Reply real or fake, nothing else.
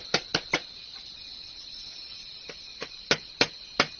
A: real